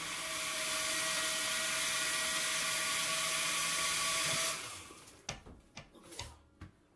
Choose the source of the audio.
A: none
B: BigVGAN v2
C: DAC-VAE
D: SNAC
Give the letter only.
A